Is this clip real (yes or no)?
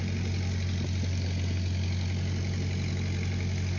yes